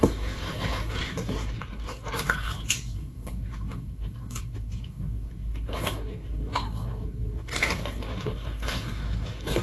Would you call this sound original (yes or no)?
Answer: no